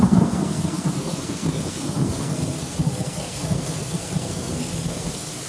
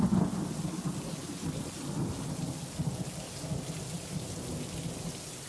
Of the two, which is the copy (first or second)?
first